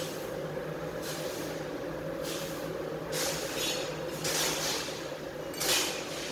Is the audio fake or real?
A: real